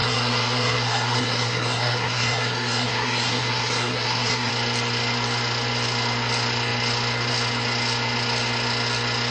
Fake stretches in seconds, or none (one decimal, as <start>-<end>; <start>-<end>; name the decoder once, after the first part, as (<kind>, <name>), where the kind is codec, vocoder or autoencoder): 0.0-4.5 (codec, SNAC)